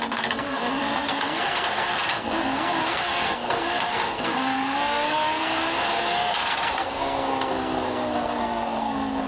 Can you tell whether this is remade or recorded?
remade